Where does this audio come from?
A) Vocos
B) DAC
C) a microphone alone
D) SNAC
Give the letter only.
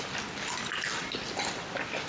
C